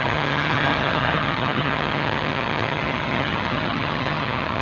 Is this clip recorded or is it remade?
remade